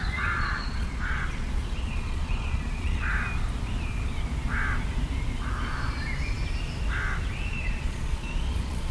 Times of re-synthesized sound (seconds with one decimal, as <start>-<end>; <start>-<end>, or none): 0.0-3.1; 7.5-8.9